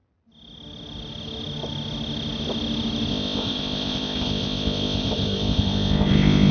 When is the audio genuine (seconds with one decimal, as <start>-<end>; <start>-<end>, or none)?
0.0-3.1